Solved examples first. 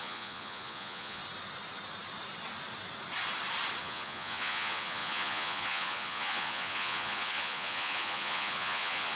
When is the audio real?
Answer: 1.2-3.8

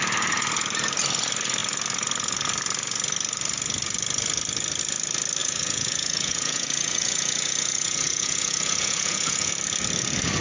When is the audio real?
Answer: 0.0-5.4; 9.5-10.4